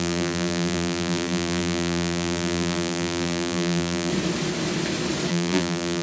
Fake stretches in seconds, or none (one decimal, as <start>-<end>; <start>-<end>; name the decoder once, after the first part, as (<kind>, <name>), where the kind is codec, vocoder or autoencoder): 0.0-4.1 (vocoder, BigVGAN v2); 5.3-6.0